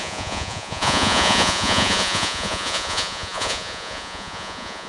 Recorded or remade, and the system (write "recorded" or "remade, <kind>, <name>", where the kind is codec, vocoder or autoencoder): remade, vocoder, Vocos